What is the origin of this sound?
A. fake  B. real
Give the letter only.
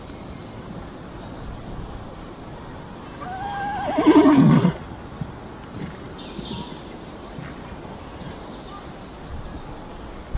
B